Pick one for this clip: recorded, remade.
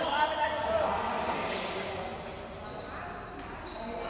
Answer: recorded